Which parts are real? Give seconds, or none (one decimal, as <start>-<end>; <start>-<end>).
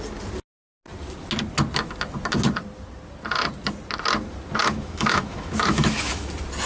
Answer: 0.0-4.6; 6.3-6.7